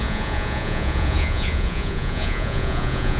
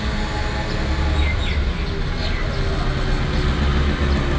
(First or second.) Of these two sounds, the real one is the second